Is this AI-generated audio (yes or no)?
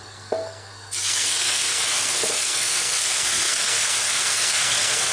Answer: yes